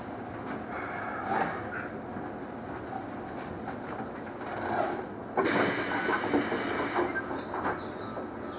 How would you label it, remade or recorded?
recorded